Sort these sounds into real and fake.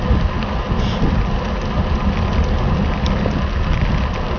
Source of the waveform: real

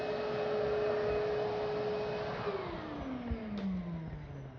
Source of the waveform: real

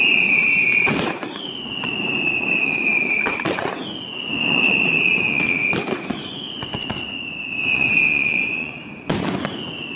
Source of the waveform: fake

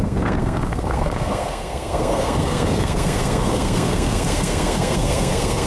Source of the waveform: fake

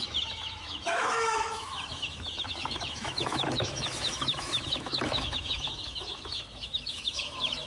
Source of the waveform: fake